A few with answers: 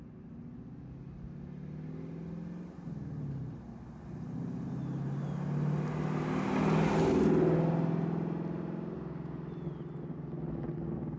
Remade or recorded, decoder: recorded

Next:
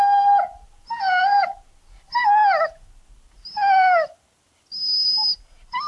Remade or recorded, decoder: recorded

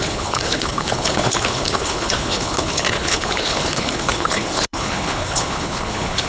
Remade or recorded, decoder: remade, codec, HILCodec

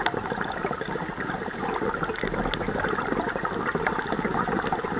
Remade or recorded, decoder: recorded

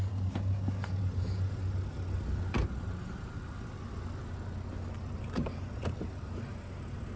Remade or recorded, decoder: recorded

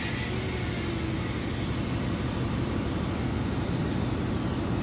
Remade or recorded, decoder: recorded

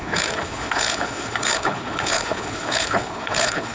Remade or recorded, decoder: remade, codec, HILCodec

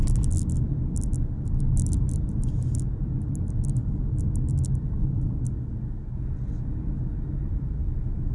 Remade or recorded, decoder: recorded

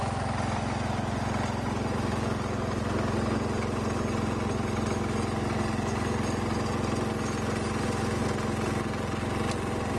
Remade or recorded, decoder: recorded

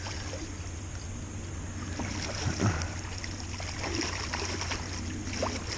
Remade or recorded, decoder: recorded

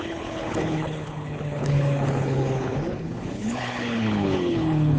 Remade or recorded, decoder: remade, codec, HILCodec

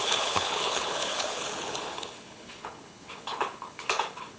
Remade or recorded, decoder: remade, codec, HILCodec